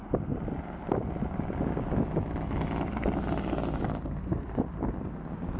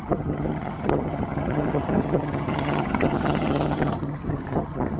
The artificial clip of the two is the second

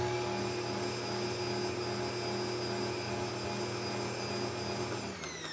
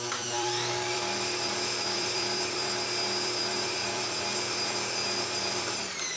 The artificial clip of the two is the second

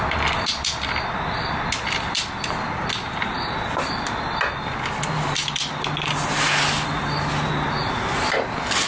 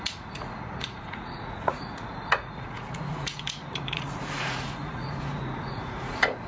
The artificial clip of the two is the second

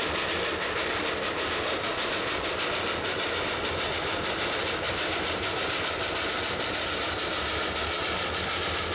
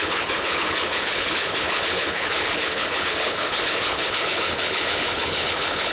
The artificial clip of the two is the second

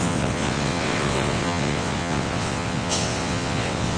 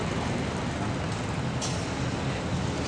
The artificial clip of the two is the first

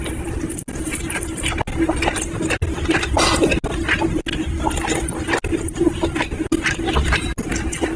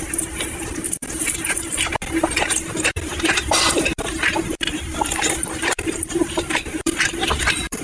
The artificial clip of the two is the second